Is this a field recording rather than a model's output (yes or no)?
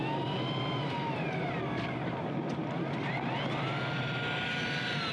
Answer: yes